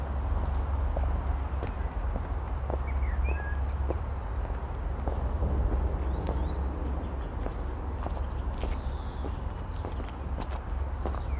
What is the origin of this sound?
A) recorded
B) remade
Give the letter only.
A